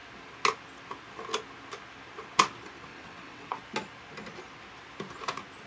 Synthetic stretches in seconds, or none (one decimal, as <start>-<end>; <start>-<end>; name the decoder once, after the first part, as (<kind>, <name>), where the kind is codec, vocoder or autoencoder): 2.9-3.6 (vocoder, WaveNeXt)